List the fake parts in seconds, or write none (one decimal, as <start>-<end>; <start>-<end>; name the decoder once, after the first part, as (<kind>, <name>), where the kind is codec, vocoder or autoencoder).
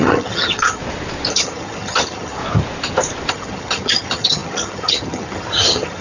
0.0-0.8 (vocoder, HiFi-GAN); 1.3-2.4; 3.3-6.0